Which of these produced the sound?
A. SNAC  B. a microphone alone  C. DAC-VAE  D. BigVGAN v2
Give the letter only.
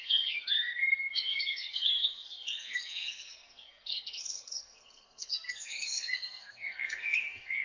A